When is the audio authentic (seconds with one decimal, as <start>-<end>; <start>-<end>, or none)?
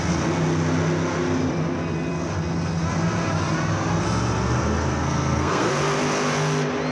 0.0-4.9; 5.7-6.9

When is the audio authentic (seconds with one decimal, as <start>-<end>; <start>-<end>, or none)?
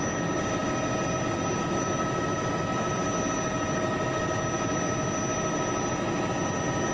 0.0-6.9